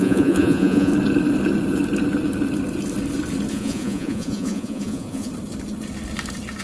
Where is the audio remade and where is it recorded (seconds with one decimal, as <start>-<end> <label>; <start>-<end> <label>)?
0.0-0.9 remade; 0.9-3.5 recorded; 3.5-5.3 remade; 5.3-6.6 recorded